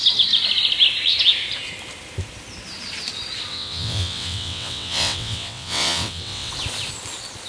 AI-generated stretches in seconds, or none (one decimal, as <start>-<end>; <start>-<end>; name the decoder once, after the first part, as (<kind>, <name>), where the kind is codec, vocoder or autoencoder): 3.5-6.5 (vocoder, WaveNeXt)